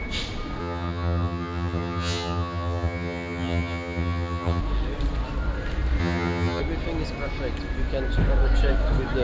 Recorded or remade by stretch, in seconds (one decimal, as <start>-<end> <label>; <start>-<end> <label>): 0.0-0.6 recorded; 0.6-4.6 remade; 4.6-6.0 recorded; 6.0-6.6 remade; 6.6-9.2 recorded